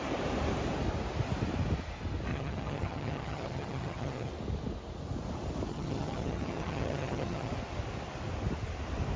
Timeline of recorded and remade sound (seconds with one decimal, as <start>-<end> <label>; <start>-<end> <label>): 0.0-2.3 recorded; 2.3-4.3 remade; 4.3-5.7 recorded; 5.7-7.5 remade; 7.5-9.2 recorded